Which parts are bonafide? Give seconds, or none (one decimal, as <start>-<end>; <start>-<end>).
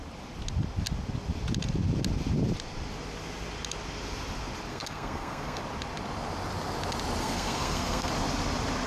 0.0-4.7; 5.6-7.2; 8.1-8.9